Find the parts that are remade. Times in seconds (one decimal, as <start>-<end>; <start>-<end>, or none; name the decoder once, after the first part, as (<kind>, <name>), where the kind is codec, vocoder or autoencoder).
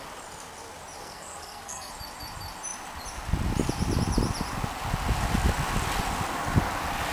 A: 1.0-1.9 (codec, SNAC)